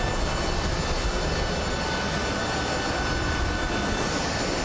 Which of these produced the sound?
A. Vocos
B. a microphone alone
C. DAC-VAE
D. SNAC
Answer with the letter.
B